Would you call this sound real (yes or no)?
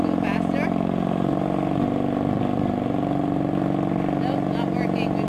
yes